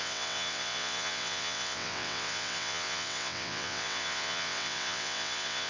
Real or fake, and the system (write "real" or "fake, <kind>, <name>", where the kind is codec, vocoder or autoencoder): fake, vocoder, WaveNeXt